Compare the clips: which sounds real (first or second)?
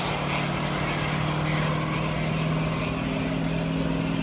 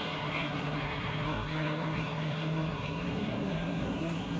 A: first